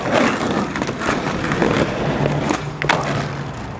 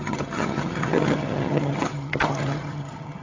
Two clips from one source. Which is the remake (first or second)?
second